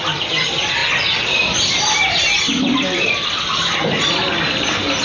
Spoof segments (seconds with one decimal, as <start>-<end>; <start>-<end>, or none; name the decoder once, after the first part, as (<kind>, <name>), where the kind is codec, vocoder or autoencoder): none